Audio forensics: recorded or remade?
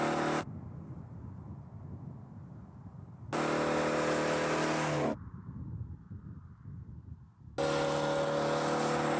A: recorded